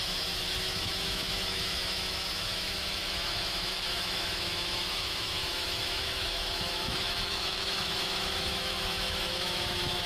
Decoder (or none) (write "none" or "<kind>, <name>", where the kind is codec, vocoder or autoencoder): autoencoder, DAC-VAE